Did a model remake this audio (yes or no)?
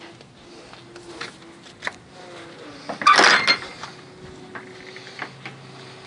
no